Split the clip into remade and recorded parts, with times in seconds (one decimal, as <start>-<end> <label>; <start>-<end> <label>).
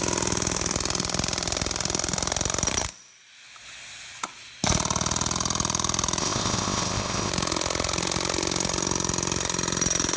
0.0-6.2 recorded; 6.2-7.3 remade; 7.3-10.2 recorded